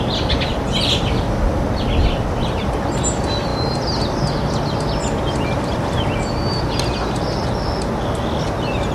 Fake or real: real